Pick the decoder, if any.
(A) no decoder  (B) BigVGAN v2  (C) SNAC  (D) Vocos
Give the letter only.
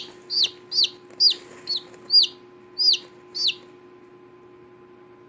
A